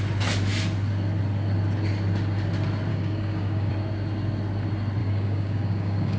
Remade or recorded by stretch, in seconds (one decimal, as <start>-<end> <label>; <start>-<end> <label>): 0.0-2.9 recorded; 2.9-3.7 remade; 3.7-5.0 recorded; 5.0-6.2 remade